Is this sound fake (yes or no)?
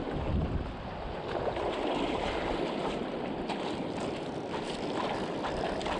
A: no